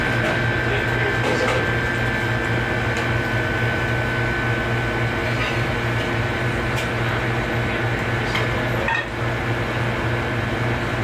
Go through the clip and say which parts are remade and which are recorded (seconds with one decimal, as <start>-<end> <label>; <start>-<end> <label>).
0.0-5.2 recorded; 5.2-7.5 remade; 7.5-11.0 recorded